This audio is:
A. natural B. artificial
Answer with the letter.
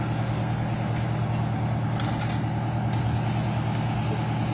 A